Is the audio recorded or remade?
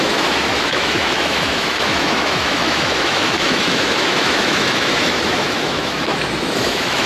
remade